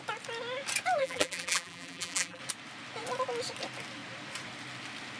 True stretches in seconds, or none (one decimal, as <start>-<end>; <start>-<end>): 0.0-1.0; 2.4-5.2